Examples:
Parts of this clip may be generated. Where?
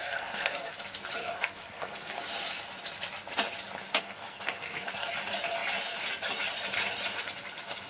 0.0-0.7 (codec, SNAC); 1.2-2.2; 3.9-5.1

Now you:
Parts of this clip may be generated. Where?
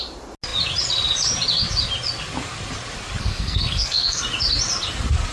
3.2-4.2 (codec, SNAC)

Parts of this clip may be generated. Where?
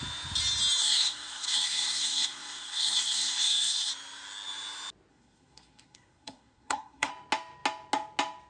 0.8-3.9 (codec, SNAC); 5.1-7.1